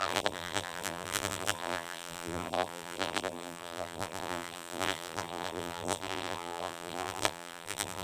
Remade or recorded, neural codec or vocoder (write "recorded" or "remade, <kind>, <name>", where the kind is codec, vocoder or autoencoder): remade, vocoder, BigVGAN v2